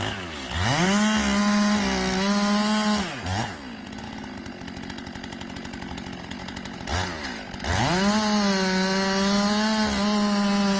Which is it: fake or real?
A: real